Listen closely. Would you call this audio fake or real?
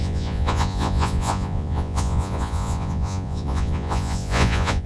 fake